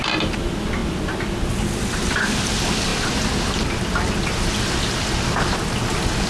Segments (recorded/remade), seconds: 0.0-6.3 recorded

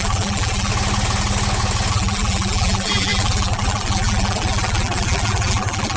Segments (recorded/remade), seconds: 0.0-0.7 remade; 0.7-1.9 recorded; 1.9-6.0 remade

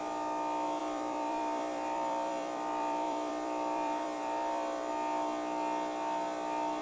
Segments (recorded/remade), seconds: 0.0-0.8 recorded; 0.8-4.9 remade; 4.9-6.8 recorded